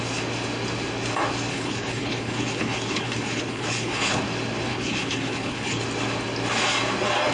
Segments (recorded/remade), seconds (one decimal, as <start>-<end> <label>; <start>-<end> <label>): 0.0-1.5 recorded; 1.5-4.2 remade; 4.2-4.7 recorded; 4.7-5.8 remade; 5.8-7.3 recorded